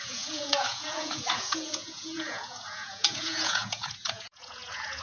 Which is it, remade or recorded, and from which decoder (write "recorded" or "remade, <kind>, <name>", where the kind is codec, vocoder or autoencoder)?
remade, vocoder, Vocos